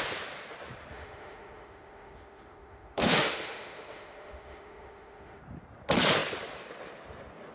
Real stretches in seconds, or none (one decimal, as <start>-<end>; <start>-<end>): 0.0-0.9; 5.4-7.5